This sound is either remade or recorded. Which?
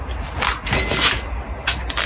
recorded